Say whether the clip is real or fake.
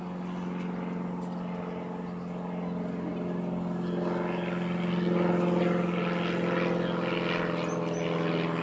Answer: real